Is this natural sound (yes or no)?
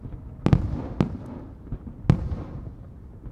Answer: yes